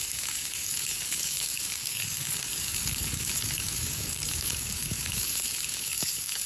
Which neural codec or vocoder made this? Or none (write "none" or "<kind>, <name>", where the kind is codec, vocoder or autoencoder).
codec, DAC